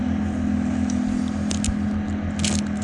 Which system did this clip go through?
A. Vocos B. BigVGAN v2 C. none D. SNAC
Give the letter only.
C